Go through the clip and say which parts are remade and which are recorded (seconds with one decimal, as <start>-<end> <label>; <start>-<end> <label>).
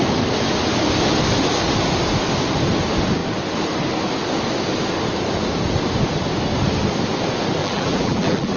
0.0-7.6 recorded; 7.6-8.6 remade